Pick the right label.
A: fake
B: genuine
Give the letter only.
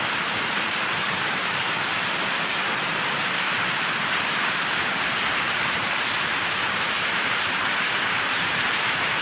A